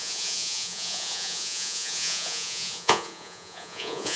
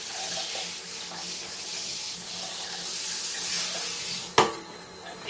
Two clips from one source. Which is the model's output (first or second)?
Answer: first